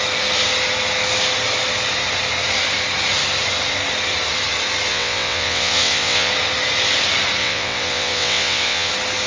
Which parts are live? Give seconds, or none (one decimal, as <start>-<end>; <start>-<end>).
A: 0.0-4.9; 6.3-7.4; 8.9-9.3